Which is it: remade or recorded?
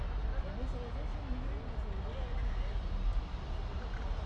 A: recorded